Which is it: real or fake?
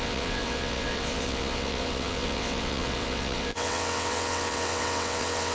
fake